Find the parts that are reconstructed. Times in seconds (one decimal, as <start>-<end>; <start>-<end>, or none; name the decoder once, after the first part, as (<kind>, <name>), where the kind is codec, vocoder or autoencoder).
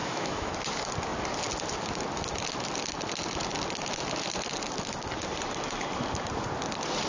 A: 0.0-0.5 (autoencoder, DAC-VAE)